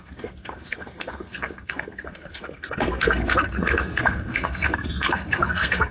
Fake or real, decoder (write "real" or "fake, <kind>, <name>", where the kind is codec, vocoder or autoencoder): fake, codec, SNAC